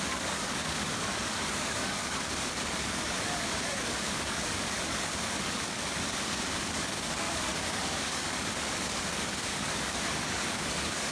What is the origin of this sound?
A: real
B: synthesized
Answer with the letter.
B